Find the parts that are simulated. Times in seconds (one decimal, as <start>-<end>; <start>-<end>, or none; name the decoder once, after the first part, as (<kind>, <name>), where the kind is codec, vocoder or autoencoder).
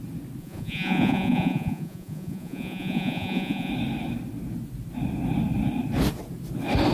0.4-3.7 (vocoder, Vocos)